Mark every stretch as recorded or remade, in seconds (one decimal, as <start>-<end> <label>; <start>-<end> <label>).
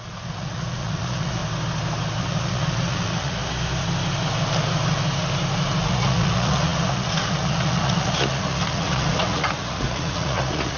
0.0-1.4 remade; 1.4-2.2 recorded; 2.2-3.4 remade; 3.4-5.8 recorded; 5.8-10.8 remade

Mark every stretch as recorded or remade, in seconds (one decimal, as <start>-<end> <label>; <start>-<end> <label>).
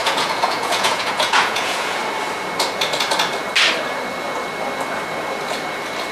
0.0-2.0 remade; 2.0-6.1 recorded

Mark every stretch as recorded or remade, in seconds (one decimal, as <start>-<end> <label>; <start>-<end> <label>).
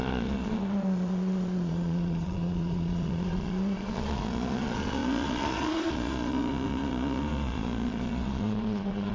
0.0-9.1 remade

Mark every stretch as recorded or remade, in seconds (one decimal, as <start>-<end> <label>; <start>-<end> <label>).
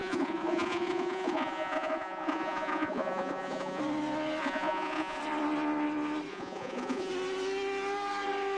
0.0-3.8 remade; 3.8-4.4 recorded; 4.4-5.2 remade; 5.2-6.3 recorded; 6.3-7.1 remade; 7.1-8.6 recorded